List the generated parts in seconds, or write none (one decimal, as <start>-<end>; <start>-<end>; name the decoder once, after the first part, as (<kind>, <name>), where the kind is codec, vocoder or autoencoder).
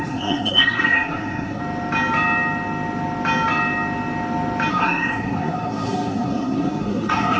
0.0-1.6 (codec, SNAC); 4.7-7.4